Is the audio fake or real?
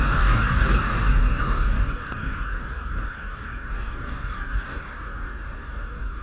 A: fake